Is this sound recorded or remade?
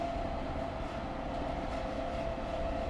recorded